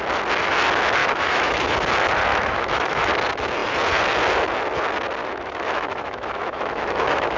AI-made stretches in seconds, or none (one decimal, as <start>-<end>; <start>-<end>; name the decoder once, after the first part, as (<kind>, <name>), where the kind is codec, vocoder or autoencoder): 1.0-1.6 (autoencoder, DAC-VAE); 2.3-3.1; 5.2-7.4